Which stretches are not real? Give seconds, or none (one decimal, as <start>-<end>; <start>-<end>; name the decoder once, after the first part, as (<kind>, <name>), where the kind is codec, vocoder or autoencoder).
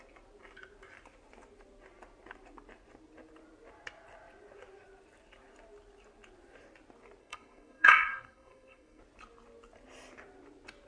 7.2-9.0 (codec, SNAC)